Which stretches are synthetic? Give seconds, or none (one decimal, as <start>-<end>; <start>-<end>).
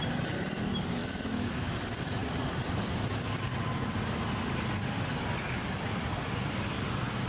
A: 1.0-1.8